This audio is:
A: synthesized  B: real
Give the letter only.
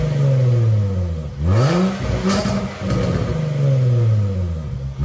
B